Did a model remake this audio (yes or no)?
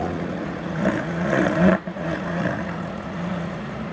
yes